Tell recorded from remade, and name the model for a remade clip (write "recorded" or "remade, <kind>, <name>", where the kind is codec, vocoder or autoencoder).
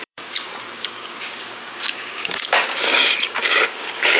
remade, codec, DAC